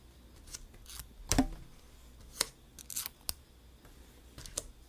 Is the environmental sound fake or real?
real